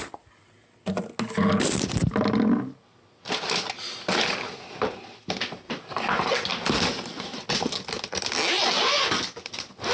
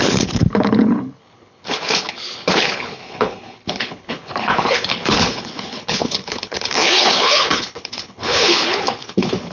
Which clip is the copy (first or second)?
second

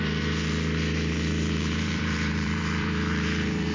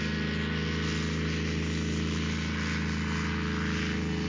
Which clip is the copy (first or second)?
first